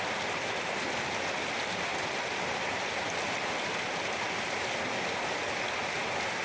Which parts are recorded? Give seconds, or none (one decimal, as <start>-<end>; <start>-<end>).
0.0-1.9; 5.6-6.4